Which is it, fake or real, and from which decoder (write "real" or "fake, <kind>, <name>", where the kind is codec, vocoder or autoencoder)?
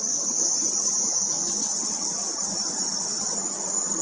fake, vocoder, HiFi-GAN